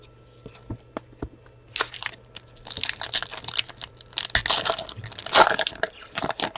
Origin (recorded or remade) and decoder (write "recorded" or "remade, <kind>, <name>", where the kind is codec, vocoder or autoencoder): recorded